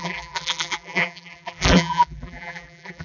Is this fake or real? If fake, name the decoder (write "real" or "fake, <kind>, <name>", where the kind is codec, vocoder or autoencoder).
fake, vocoder, BigVGAN v2